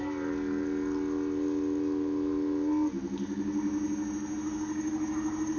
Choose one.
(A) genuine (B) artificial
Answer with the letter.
A